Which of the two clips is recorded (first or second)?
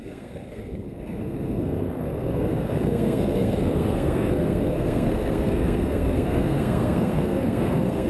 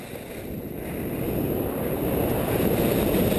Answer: second